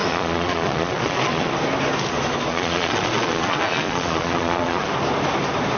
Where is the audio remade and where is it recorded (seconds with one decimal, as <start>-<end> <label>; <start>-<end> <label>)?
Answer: 0.0-1.5 remade; 1.5-2.5 recorded; 2.5-4.9 remade; 4.9-5.8 recorded

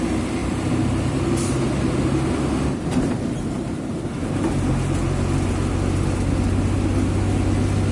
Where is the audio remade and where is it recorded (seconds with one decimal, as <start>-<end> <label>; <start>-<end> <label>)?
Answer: 0.0-0.4 recorded; 0.4-3.8 remade; 3.8-7.9 recorded

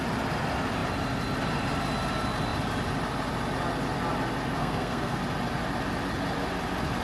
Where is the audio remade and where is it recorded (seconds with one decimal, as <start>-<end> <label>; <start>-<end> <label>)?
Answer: 0.0-4.6 recorded; 4.6-5.2 remade; 5.2-7.0 recorded

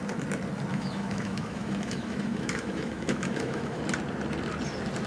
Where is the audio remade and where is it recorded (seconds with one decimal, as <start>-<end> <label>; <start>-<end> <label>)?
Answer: 0.0-0.7 recorded; 0.7-3.8 remade; 3.8-5.1 recorded

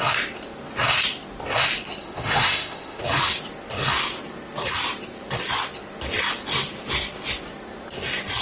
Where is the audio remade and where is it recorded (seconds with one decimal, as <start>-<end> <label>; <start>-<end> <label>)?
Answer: 0.0-2.0 recorded; 2.0-3.0 remade; 3.0-8.4 recorded

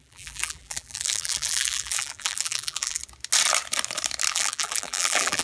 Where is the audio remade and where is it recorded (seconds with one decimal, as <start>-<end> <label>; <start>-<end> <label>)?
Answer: 0.0-3.0 remade; 3.0-4.3 recorded; 4.3-5.4 remade

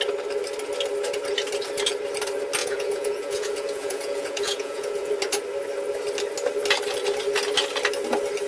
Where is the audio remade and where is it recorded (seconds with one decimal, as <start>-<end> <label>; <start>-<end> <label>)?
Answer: 0.0-2.6 recorded; 2.6-5.1 remade; 5.1-8.5 recorded